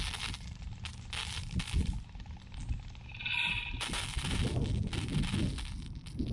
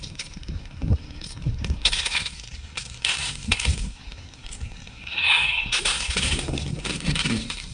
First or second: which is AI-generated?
second